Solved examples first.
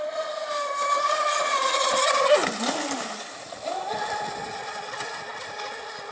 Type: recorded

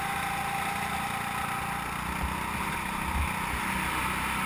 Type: recorded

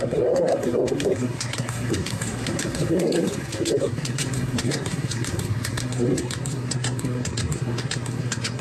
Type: remade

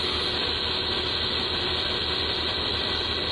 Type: recorded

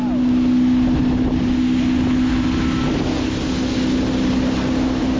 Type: recorded